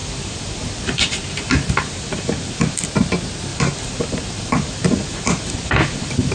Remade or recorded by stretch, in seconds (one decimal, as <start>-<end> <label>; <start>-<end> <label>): 0.0-2.9 remade; 2.9-3.5 recorded; 3.5-6.3 remade